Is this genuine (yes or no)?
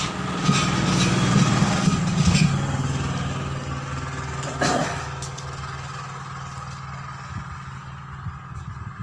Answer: yes